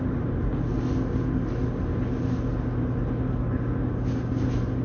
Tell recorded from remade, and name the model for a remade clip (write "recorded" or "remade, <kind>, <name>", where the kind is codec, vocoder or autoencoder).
recorded